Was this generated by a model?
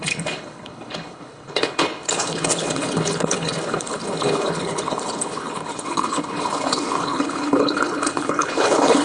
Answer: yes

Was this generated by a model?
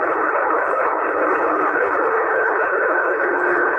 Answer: yes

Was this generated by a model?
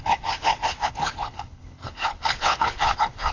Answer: yes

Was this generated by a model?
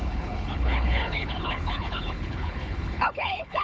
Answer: yes